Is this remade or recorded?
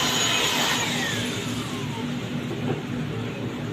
recorded